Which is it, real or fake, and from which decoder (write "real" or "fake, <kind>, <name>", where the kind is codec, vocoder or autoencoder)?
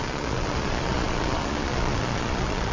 fake, vocoder, Vocos